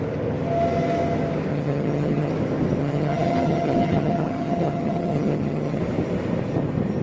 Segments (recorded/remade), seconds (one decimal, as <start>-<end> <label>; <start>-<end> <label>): 0.0-1.5 recorded; 1.5-2.3 remade; 2.3-2.8 recorded; 2.8-5.8 remade; 5.8-7.0 recorded